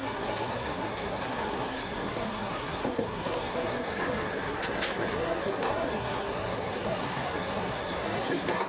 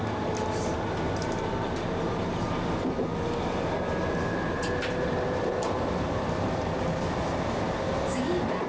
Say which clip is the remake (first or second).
first